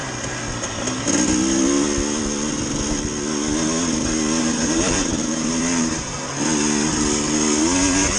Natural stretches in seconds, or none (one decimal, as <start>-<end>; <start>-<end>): 0.0-4.4; 6.3-8.2